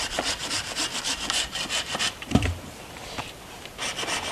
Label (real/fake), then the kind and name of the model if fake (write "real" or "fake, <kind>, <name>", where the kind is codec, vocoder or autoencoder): real